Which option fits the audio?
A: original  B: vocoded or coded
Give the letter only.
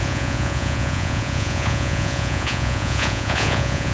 B